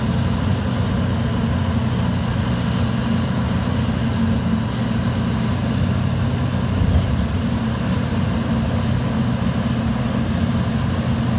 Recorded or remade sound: recorded